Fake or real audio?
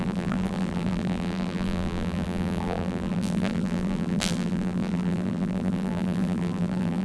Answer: fake